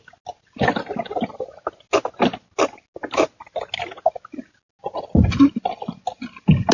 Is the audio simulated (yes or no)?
no